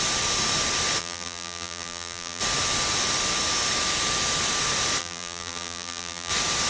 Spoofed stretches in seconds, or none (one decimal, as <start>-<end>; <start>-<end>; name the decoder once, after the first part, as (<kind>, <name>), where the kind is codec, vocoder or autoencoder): 1.0-2.4 (vocoder, BigVGAN v2); 5.0-6.3